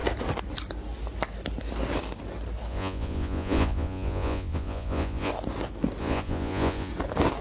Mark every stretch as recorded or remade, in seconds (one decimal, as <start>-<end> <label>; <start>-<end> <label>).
0.0-2.7 recorded; 2.7-5.3 remade; 5.3-6.0 recorded; 6.0-6.9 remade; 6.9-7.4 recorded